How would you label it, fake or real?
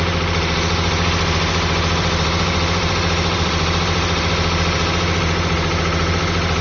fake